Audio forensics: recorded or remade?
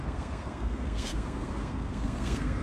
remade